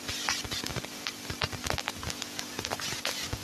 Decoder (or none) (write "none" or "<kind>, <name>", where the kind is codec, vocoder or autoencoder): none